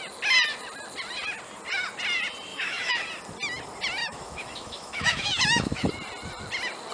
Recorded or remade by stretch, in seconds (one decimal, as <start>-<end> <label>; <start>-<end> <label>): 0.0-2.5 recorded; 2.5-3.0 remade; 3.0-4.0 recorded; 4.0-5.9 remade; 5.9-6.9 recorded